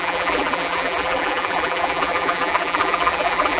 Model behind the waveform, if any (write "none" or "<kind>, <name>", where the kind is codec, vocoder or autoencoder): vocoder, BigVGAN v2